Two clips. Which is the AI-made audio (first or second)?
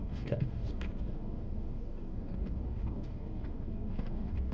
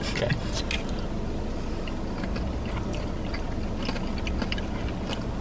first